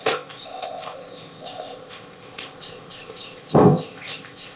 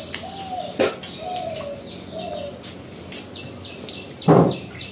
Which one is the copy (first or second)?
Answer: first